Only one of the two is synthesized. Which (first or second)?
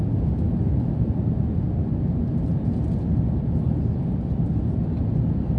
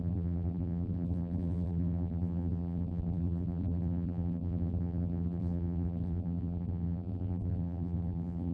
second